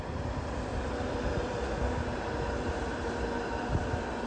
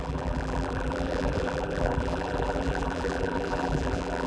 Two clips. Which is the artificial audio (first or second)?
second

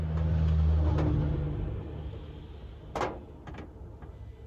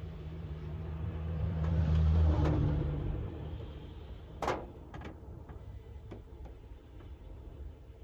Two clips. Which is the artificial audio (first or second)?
second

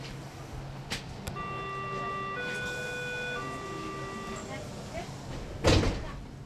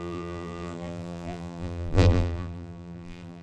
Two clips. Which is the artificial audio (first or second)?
second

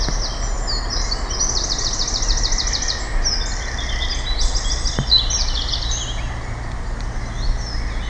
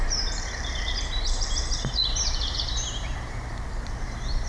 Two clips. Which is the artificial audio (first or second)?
second